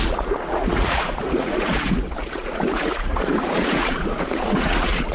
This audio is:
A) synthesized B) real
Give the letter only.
A